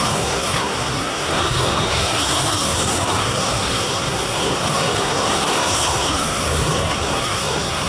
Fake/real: fake